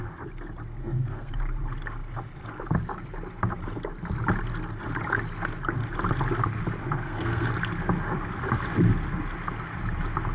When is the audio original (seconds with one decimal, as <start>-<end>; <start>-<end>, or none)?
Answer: 0.0-0.8; 1.3-6.8; 7.5-10.3